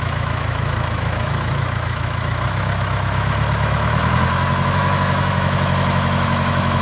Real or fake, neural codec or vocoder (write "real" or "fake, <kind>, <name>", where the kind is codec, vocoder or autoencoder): fake, autoencoder, DAC-VAE